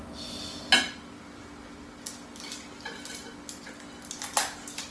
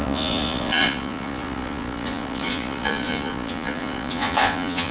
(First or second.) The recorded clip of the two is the first